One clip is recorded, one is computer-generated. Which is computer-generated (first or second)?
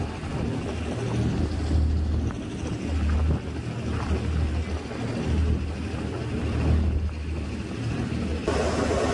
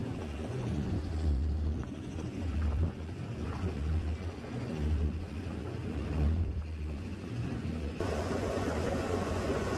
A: second